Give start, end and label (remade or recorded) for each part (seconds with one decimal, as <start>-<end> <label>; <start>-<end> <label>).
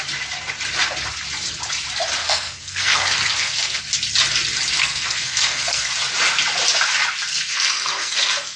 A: 0.0-2.2 recorded; 2.2-3.8 remade; 3.8-4.8 recorded; 4.8-5.9 remade; 5.9-7.3 recorded; 7.3-8.6 remade